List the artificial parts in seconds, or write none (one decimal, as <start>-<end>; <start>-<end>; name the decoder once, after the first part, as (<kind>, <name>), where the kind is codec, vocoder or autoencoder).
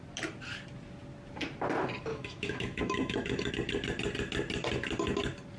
2.1-3.5 (autoencoder, DAC-VAE)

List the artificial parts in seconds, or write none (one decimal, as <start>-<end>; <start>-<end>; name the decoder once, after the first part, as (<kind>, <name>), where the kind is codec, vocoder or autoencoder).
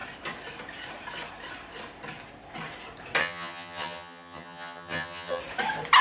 3.2-5.4 (vocoder, HiFi-GAN)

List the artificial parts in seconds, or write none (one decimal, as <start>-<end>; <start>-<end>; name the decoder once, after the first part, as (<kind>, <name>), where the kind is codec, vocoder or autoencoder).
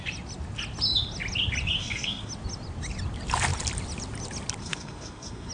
1.8-2.3 (codec, SNAC); 4.6-5.5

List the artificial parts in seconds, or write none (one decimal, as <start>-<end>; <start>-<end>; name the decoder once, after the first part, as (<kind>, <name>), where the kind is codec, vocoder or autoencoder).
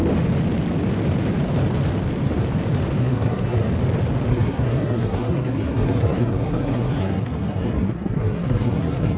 3.0-3.7 (codec, SNAC); 4.3-9.2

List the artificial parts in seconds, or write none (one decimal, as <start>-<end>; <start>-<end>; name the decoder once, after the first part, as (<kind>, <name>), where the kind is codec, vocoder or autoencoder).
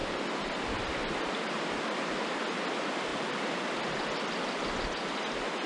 none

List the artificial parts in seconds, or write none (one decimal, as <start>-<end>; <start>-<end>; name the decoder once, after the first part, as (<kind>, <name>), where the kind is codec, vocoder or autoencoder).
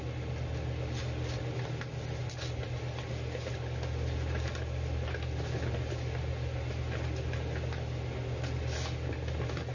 none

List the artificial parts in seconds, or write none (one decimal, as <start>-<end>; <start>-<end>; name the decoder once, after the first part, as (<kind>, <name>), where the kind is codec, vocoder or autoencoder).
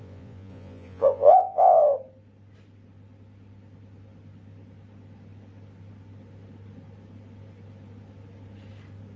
0.0-1.8 (vocoder, Vocos)